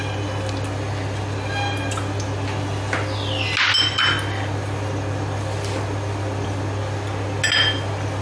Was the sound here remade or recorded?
recorded